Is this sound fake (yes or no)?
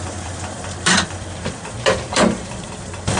yes